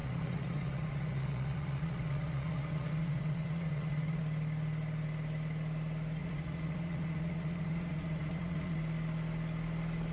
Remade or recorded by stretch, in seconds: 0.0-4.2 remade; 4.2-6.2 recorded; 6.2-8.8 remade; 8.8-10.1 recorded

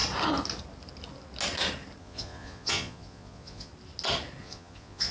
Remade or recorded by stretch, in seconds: 0.0-2.0 recorded; 2.0-3.7 remade; 3.7-4.4 recorded; 4.4-5.1 remade